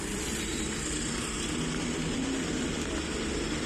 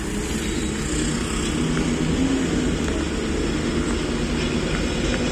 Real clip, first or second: second